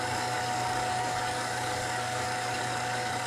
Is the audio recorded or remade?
remade